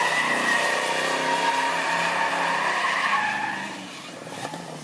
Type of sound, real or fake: fake